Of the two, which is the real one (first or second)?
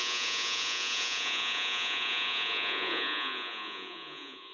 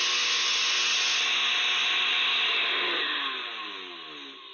second